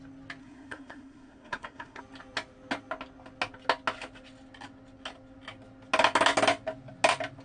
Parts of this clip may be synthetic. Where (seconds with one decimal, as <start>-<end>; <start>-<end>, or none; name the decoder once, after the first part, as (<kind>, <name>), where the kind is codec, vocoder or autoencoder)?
0.4-2.0 (codec, SNAC)